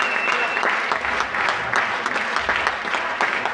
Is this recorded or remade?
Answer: recorded